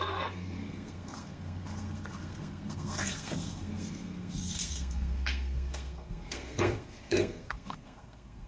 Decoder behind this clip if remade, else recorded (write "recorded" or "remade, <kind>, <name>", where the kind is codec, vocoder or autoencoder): remade, codec, SNAC